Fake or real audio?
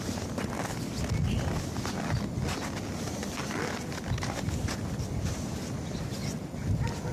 real